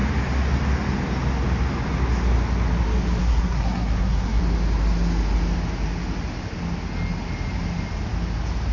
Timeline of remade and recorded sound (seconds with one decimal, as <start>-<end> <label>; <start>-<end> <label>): 0.0-3.2 recorded; 3.2-4.4 remade; 4.4-8.7 recorded

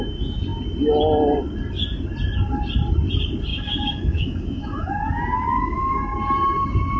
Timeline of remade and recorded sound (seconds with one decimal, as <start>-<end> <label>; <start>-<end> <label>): 0.0-3.5 recorded; 3.5-6.0 remade; 6.0-7.0 recorded

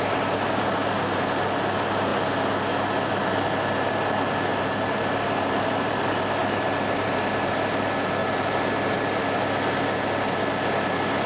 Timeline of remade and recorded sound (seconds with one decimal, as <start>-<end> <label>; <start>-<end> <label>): 0.0-4.5 recorded; 4.5-7.5 remade; 7.5-11.3 recorded

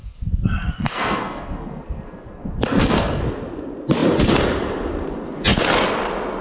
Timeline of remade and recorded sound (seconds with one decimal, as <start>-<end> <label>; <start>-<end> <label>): 0.0-3.2 remade; 3.2-6.4 recorded

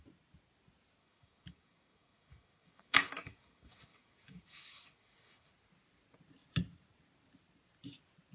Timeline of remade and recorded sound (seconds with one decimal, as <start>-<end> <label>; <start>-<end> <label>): 0.0-1.0 recorded; 1.0-5.5 remade; 5.5-8.3 recorded

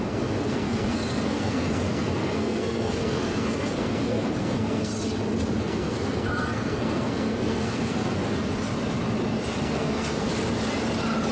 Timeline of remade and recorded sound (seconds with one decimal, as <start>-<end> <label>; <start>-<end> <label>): 0.0-4.9 remade; 4.9-5.6 recorded; 5.6-8.2 remade; 8.2-9.6 recorded; 9.6-10.3 remade; 10.3-11.3 recorded

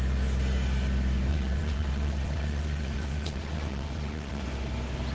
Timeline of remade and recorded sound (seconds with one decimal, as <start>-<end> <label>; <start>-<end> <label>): 0.0-1.3 recorded; 1.3-4.4 remade; 4.4-5.1 recorded

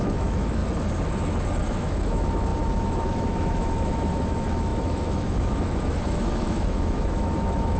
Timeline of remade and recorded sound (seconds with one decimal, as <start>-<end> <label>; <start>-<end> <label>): 0.0-0.6 remade; 0.6-1.6 recorded; 1.6-7.8 remade